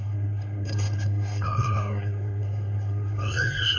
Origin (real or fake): fake